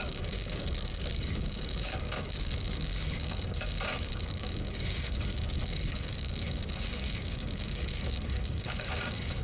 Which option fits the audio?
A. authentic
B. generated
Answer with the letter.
B